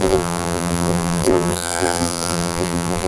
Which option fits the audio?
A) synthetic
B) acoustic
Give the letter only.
A